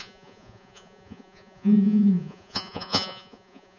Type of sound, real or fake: fake